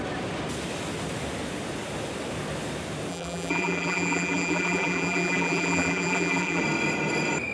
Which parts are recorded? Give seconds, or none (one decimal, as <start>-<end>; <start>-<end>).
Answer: 0.0-3.1; 6.6-7.5